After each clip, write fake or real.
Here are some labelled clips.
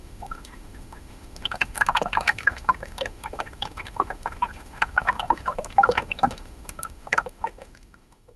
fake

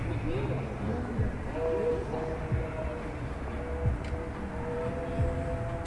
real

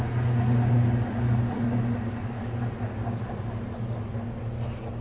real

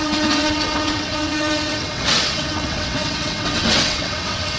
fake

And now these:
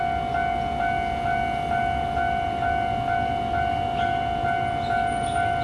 real